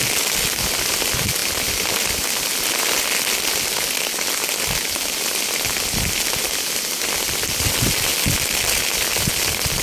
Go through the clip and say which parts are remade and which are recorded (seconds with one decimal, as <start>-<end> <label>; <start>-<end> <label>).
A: 0.0-9.8 recorded